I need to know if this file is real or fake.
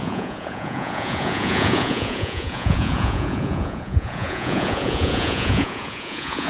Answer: fake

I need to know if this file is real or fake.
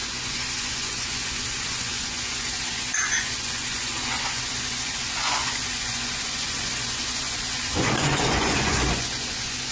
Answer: fake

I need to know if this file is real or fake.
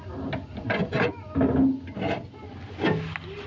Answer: real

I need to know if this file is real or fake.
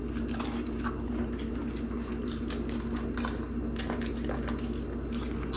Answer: real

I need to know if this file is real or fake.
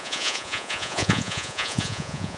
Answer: fake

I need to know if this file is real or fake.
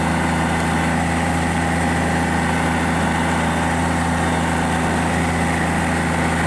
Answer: real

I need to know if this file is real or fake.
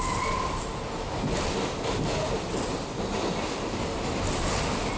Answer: real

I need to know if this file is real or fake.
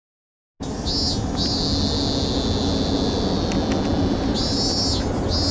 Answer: real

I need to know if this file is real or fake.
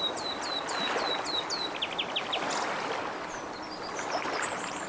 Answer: real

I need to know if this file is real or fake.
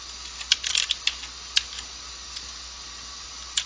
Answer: real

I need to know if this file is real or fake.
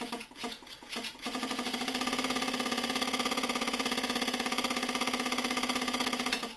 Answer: fake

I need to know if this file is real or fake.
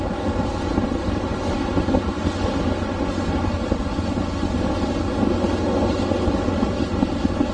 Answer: real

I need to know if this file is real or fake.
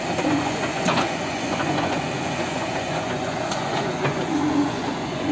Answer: fake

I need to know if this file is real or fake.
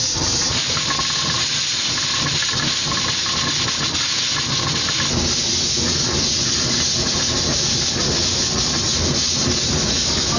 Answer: real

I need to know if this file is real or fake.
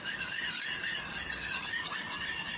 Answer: real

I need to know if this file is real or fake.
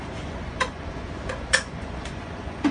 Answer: fake